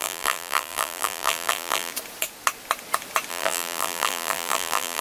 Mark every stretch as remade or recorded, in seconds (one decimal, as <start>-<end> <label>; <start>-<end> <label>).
0.0-1.9 remade; 1.9-3.3 recorded; 3.3-5.0 remade